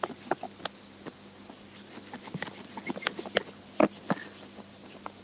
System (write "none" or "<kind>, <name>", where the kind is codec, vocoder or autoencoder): none